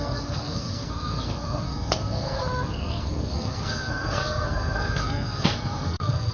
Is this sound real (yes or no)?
no